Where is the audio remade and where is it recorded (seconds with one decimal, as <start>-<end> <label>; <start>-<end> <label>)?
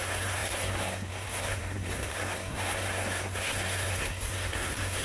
0.0-5.0 remade